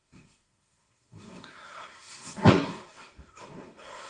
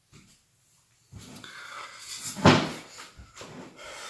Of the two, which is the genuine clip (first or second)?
second